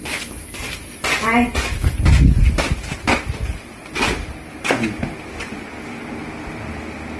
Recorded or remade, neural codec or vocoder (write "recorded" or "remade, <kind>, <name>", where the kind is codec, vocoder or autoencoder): recorded